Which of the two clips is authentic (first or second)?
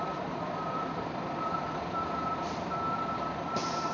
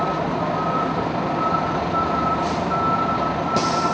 second